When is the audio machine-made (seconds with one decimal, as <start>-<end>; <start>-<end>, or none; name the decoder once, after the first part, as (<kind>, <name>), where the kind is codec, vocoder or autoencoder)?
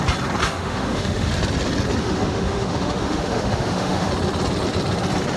0.4-1.3 (autoencoder, DAC-VAE); 2.0-4.1